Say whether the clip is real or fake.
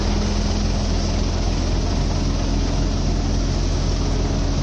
real